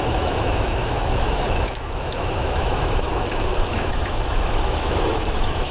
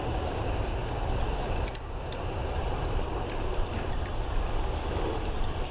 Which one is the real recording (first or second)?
second